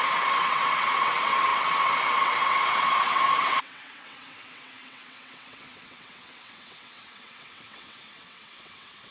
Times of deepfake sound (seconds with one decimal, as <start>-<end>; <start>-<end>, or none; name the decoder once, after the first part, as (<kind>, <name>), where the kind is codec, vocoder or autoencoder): 0.0-9.1 (vocoder, WaveNeXt)